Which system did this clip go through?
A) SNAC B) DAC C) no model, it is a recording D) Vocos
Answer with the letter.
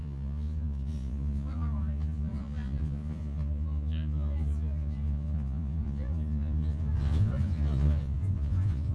D